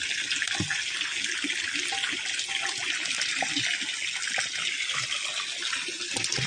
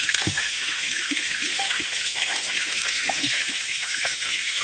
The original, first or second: first